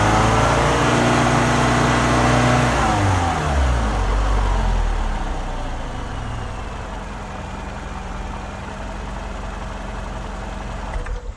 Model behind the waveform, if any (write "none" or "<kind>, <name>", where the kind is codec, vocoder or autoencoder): none